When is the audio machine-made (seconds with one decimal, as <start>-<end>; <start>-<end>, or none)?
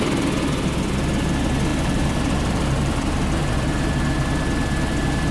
1.7-4.0